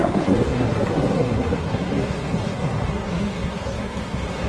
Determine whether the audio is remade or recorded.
remade